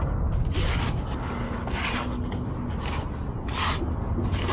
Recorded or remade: recorded